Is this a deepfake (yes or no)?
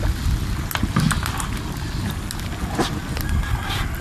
no